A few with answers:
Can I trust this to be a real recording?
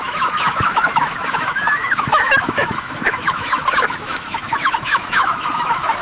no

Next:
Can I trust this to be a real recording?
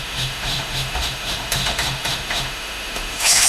no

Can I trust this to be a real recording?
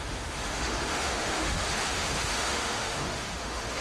no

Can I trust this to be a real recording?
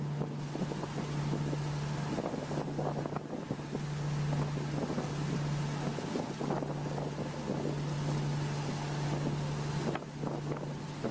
yes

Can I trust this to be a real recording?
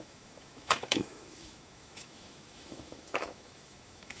no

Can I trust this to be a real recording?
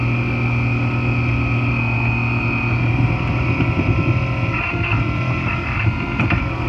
yes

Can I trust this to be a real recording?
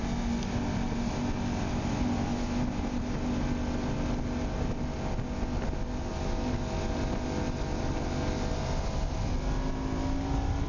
yes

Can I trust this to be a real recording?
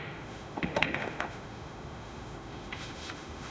no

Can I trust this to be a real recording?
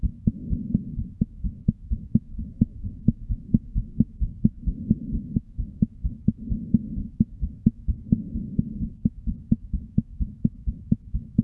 no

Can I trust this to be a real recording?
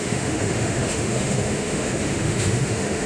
no